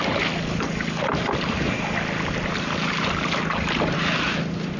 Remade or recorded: recorded